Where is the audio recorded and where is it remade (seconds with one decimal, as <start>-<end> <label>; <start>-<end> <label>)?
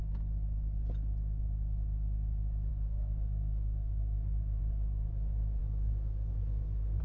0.0-2.7 recorded; 2.7-4.6 remade; 4.6-5.6 recorded; 5.6-7.0 remade